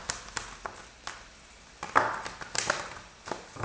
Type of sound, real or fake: real